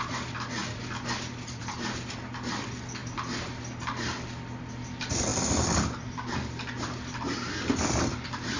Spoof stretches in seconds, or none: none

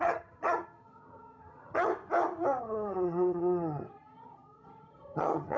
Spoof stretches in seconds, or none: 0.0-1.9 (vocoder, HiFi-GAN); 2.6-5.6

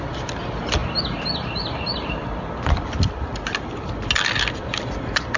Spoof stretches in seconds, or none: none